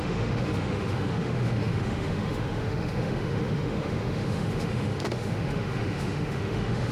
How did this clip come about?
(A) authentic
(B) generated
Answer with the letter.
B